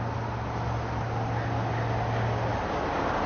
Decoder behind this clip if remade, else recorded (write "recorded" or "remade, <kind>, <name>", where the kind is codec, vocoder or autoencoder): recorded